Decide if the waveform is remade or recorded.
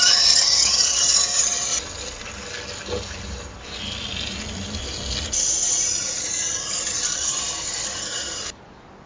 recorded